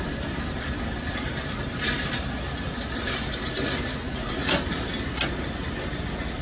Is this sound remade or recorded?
recorded